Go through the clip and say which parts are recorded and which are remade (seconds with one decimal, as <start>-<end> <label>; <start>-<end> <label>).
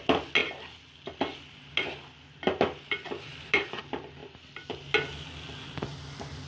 0.0-6.5 recorded